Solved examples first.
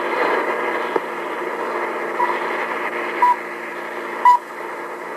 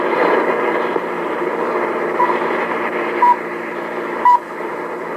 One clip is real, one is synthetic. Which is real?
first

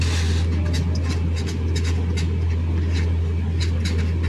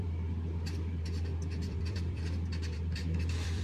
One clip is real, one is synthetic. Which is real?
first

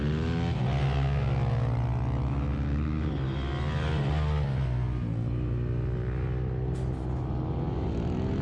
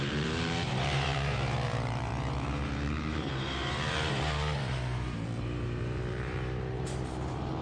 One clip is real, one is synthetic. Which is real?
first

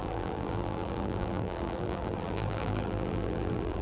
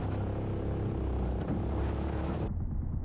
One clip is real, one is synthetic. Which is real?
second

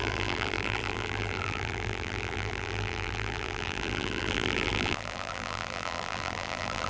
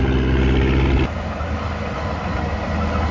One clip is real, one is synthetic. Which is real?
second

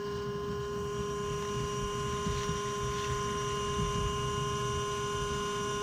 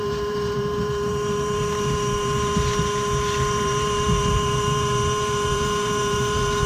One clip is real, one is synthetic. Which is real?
first